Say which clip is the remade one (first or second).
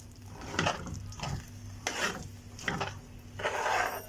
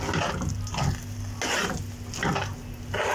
first